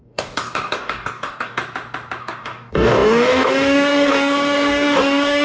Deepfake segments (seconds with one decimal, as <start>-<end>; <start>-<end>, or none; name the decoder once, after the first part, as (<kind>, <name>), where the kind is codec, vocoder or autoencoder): 0.0-1.6 (codec, DAC); 2.2-5.4